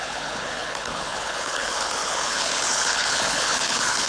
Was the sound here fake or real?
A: fake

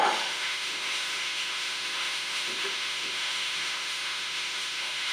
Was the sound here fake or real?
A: fake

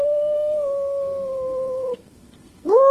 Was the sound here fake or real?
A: fake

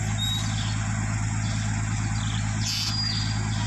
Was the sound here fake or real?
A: real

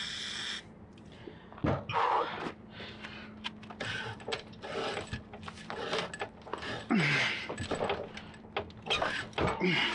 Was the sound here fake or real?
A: real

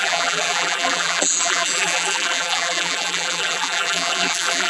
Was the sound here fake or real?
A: fake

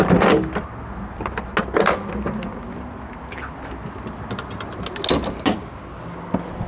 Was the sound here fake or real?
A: real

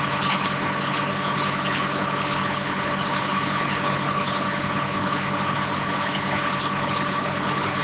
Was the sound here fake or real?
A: fake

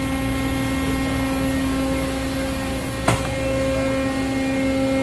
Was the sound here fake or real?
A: real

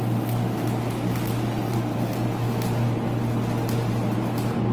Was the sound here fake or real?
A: real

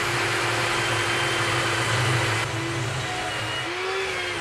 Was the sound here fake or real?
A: real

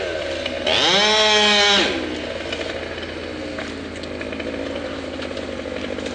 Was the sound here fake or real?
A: real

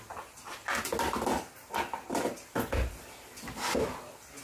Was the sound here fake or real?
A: real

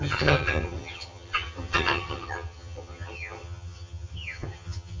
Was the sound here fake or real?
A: fake